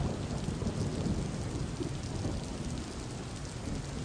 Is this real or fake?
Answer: real